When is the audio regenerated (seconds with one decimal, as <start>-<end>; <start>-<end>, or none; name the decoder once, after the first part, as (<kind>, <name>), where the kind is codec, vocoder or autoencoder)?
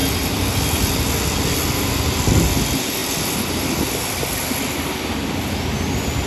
none